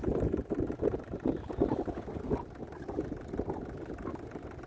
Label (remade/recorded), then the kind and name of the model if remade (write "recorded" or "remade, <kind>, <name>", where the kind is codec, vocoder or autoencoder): recorded